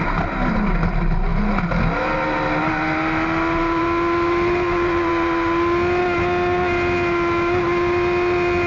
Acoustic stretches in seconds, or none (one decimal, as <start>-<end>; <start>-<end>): 0.0-8.7